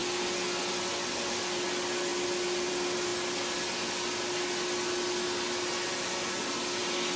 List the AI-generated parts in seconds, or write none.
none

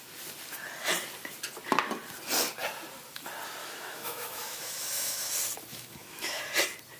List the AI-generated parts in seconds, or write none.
3.6-5.3 (autoencoder, DAC-VAE); 5.7-6.4

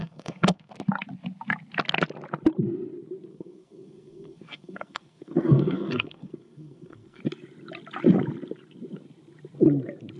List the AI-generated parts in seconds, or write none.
0.0-0.7 (codec, SNAC); 3.3-7.2